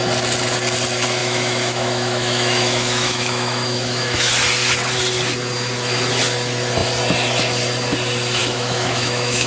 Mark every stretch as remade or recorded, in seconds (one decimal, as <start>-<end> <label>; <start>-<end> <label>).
0.0-1.2 recorded; 1.2-4.3 remade; 4.3-8.4 recorded; 8.4-9.5 remade